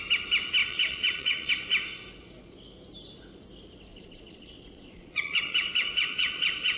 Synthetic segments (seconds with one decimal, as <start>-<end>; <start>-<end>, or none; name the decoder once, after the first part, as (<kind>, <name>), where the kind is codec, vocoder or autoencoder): 0.6-1.5 (vocoder, Vocos); 3.9-6.8